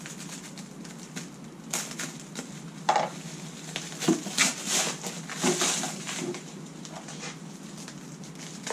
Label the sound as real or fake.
real